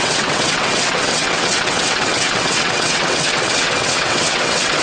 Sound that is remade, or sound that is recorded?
remade